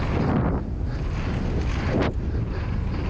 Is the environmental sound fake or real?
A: real